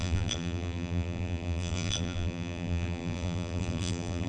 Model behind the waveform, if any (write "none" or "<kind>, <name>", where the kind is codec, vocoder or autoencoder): vocoder, BigVGAN v2